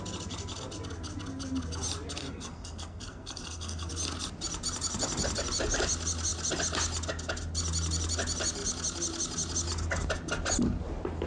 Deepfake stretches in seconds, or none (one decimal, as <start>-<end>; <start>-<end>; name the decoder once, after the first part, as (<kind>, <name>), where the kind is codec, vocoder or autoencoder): 2.2-3.9 (codec, SNAC)